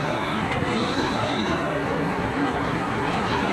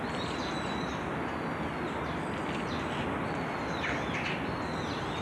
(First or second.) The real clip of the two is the second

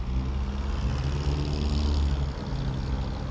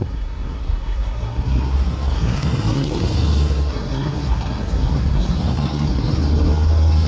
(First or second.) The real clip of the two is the first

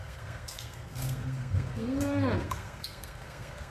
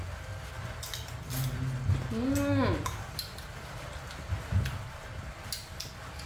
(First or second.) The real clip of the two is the second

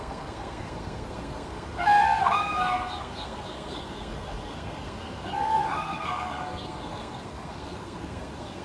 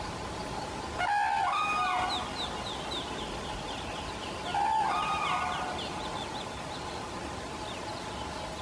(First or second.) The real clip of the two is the second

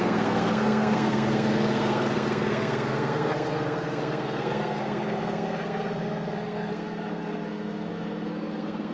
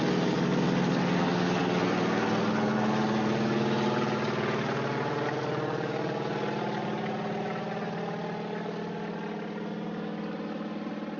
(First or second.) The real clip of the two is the second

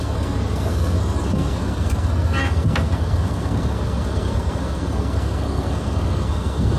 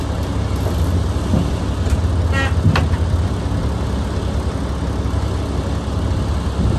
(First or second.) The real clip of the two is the second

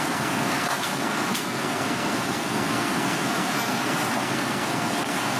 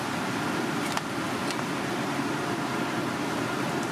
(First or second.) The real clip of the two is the second